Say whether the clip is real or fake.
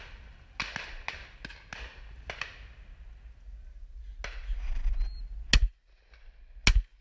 real